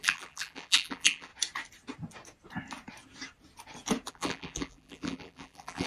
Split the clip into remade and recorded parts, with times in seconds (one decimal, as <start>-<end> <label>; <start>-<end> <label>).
0.0-1.3 remade; 1.3-4.1 recorded; 4.1-5.9 remade